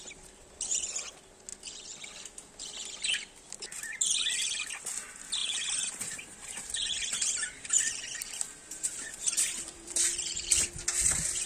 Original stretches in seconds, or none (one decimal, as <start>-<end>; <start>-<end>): 0.0-5.4; 7.8-8.6; 10.5-11.5